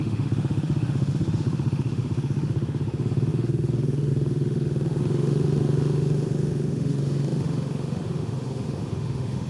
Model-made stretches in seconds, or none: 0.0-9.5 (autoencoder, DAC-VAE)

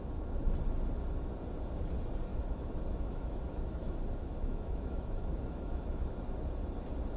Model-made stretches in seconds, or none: 2.3-6.2 (autoencoder, DAC-VAE)

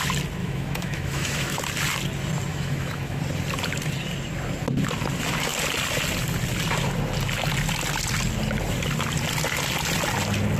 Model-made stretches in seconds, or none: 0.4-1.6 (autoencoder, DAC-VAE); 2.5-3.2